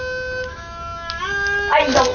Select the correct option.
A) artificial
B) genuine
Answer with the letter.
B